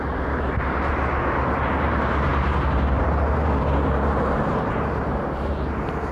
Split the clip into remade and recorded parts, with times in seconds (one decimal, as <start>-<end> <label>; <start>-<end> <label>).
0.0-6.1 remade

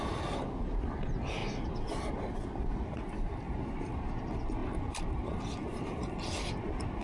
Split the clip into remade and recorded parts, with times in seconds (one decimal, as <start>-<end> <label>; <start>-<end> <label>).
0.0-1.4 remade; 1.4-2.1 recorded; 2.1-7.0 remade

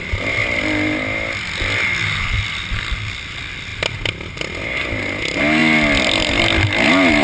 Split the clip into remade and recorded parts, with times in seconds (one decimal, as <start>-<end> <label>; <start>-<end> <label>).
0.0-7.2 recorded

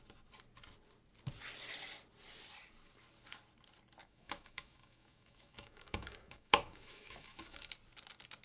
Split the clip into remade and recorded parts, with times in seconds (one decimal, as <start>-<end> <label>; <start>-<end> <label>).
0.0-4.0 recorded; 4.0-7.7 remade; 7.7-8.4 recorded